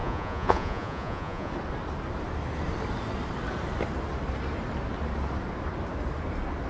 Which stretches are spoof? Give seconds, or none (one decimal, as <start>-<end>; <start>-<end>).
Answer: 0.0-1.5